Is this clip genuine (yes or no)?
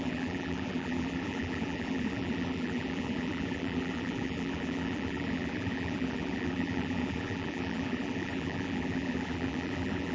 no